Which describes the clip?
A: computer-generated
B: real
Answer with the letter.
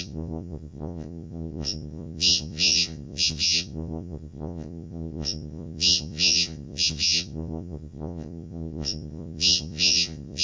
A